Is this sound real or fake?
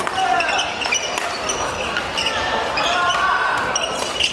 real